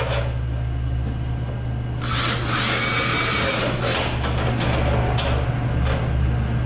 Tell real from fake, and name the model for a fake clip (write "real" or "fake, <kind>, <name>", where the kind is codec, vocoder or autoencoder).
real